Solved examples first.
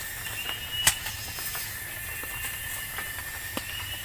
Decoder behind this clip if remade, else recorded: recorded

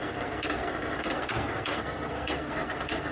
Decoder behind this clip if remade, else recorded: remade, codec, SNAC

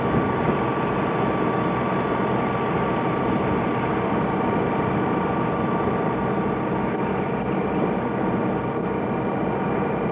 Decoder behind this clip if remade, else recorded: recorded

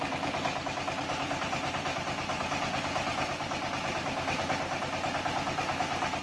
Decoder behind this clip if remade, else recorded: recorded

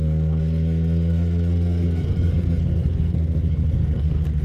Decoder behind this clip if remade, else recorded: remade, codec, SNAC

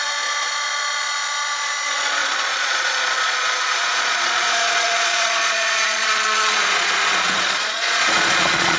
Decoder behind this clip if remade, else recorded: remade, vocoder, Vocos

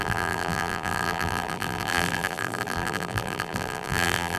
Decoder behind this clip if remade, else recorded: remade, vocoder, BigVGAN v2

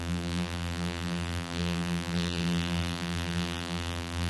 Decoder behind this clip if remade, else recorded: remade, vocoder, BigVGAN v2